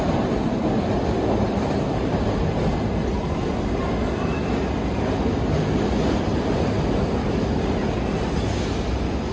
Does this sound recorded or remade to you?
recorded